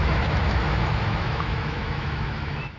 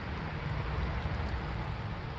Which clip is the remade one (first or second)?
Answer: first